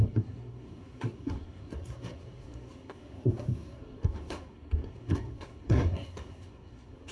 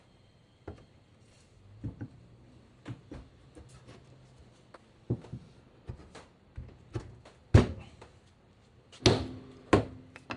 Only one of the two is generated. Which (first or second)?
first